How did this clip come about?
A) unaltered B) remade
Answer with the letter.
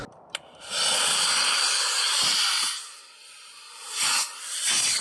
A